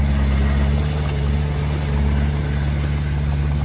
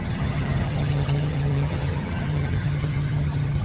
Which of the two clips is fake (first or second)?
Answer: second